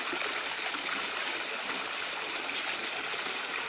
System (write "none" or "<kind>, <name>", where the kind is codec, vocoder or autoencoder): none